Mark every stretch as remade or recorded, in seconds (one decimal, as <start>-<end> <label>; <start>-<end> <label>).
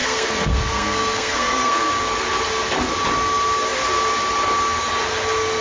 0.0-1.9 remade; 1.9-5.6 recorded